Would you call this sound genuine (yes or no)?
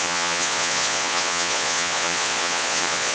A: no